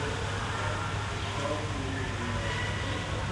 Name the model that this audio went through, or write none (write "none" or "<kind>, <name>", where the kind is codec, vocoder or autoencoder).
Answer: none